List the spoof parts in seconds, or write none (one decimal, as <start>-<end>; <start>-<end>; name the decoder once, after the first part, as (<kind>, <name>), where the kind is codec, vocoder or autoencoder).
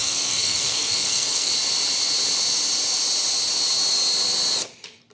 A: 0.0-1.5 (codec, SNAC)